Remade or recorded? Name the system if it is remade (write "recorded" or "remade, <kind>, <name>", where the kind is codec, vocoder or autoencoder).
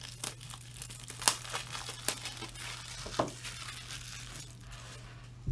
recorded